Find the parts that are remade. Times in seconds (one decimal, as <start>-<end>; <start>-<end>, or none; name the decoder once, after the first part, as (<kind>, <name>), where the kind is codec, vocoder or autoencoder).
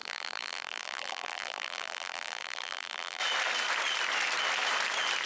0.0-3.2 (vocoder, BigVGAN v2)